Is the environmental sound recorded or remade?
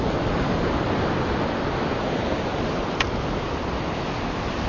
recorded